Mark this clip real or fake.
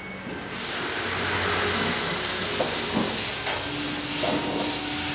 real